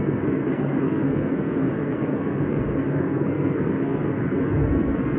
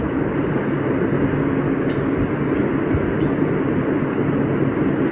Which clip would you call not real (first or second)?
first